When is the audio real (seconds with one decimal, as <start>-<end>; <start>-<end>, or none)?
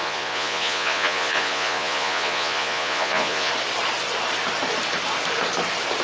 3.5-6.0